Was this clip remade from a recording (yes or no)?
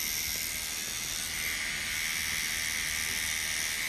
no